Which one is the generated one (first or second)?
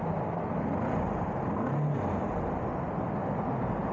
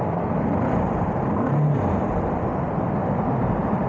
second